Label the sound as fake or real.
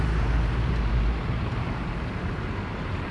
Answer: fake